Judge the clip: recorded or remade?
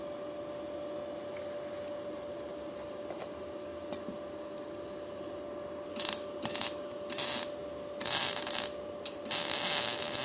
recorded